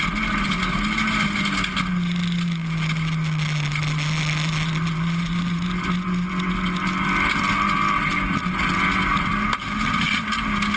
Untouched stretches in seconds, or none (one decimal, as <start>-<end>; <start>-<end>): 0.0-10.8

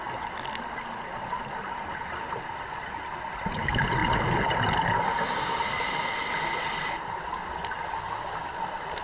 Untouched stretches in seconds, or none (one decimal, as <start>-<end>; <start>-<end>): 0.0-9.0

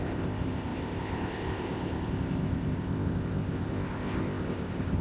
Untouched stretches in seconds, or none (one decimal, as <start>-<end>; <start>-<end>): none

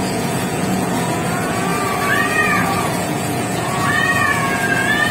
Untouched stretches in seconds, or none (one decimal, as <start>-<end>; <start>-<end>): 1.7-2.3